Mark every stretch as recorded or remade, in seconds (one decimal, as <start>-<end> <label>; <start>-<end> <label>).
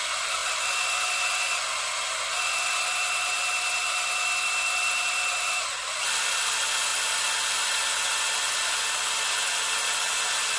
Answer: 0.0-10.6 recorded